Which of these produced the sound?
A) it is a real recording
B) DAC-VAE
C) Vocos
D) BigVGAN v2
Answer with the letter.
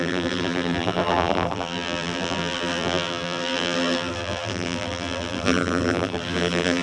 D